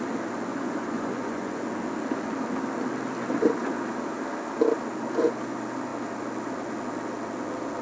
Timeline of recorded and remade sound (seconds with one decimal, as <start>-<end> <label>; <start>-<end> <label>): 0.0-0.5 recorded; 0.5-1.6 remade; 1.6-7.8 recorded